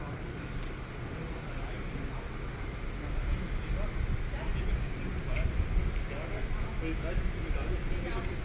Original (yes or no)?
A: yes